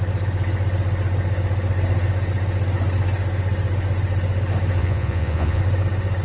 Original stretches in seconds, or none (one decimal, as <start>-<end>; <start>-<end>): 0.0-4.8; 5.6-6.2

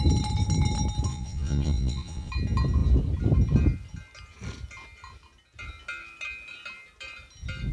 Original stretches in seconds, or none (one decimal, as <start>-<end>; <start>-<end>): 0.0-1.1; 2.3-7.7

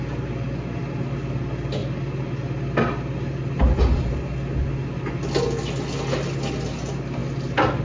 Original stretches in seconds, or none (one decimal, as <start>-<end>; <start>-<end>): 0.0-7.8